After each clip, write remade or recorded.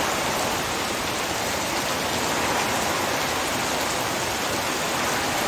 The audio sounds recorded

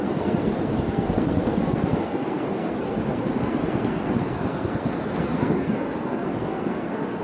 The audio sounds remade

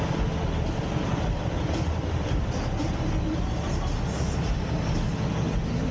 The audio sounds recorded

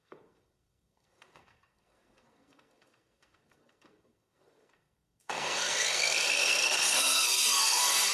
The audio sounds remade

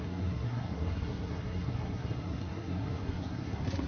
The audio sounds remade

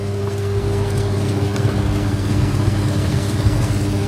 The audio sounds remade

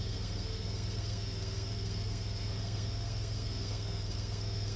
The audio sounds remade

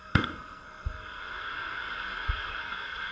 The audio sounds remade